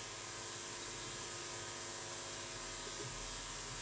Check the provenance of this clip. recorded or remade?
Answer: recorded